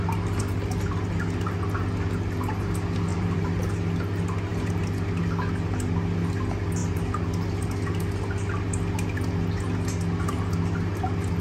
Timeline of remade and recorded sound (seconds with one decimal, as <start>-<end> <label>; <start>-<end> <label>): 0.0-3.1 recorded; 3.1-3.6 remade; 3.6-11.4 recorded